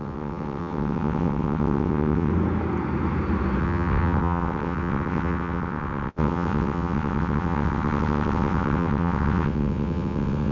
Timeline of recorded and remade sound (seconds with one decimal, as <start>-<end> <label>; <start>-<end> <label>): 0.0-2.3 remade; 2.3-3.6 recorded; 3.6-10.5 remade